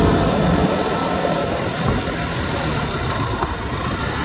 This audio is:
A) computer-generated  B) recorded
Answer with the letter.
B